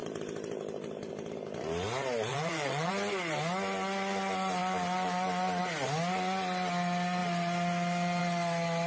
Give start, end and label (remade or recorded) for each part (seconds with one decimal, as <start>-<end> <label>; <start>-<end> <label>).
0.0-2.3 recorded; 2.3-2.9 remade; 2.9-8.9 recorded